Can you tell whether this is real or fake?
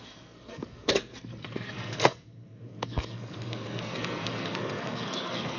fake